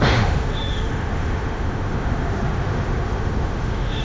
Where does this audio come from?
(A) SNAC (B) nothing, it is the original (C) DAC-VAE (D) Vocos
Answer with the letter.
C